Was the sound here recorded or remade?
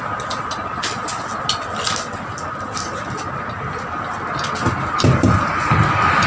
recorded